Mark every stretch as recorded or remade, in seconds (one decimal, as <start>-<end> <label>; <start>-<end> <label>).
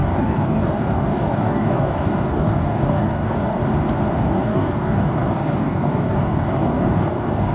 0.0-3.6 remade; 3.6-4.2 recorded; 4.2-7.5 remade